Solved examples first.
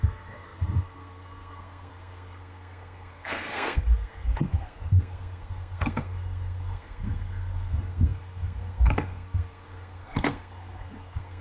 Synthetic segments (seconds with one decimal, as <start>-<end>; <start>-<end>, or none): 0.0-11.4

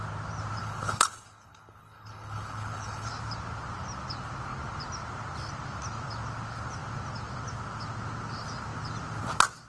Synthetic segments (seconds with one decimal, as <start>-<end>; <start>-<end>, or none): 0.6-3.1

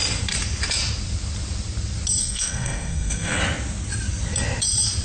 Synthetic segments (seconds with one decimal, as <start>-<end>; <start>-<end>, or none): 2.2-3.4

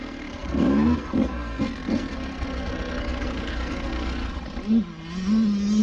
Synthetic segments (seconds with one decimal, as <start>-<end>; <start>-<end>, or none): 0.0-4.3

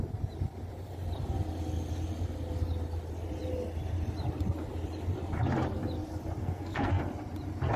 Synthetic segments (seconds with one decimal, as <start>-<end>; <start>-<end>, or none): 6.4-7.0